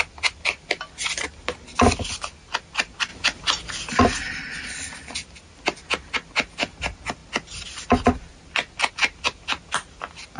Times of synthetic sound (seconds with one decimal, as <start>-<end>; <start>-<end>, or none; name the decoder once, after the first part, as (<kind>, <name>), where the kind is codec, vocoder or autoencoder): none